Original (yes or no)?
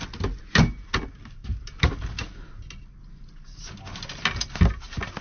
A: yes